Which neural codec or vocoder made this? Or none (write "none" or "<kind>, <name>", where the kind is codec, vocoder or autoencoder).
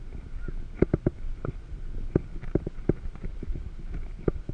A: none